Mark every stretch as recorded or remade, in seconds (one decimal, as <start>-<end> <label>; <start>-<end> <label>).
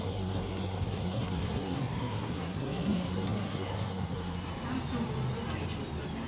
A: 0.0-4.5 remade; 4.5-6.3 recorded